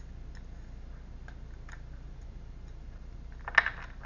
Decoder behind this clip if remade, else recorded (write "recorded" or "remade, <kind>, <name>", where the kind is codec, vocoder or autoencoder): recorded